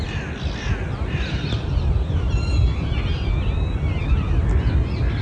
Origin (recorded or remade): recorded